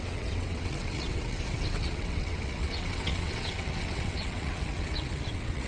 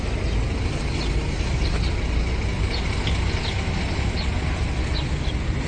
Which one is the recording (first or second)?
second